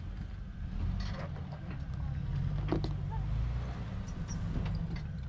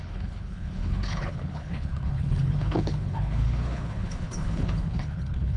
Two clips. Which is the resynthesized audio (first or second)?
second